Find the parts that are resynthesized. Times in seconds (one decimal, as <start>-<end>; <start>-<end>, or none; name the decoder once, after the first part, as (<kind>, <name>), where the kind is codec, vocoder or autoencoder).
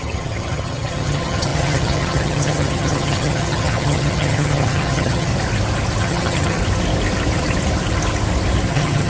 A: 0.0-5.3 (vocoder, HiFi-GAN); 6.0-6.6; 8.7-9.1